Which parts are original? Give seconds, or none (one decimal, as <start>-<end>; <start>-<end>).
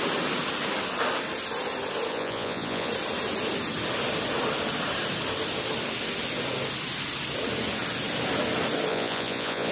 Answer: 0.0-2.1; 2.9-8.9